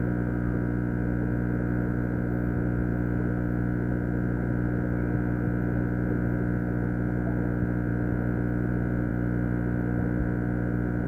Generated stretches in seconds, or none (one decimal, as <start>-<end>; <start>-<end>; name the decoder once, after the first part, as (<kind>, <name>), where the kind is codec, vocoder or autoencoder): 9.1-10.2 (vocoder, BigVGAN v2)